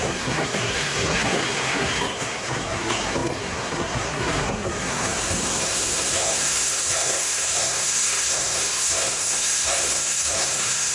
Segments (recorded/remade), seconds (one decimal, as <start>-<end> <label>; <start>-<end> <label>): 0.0-10.9 remade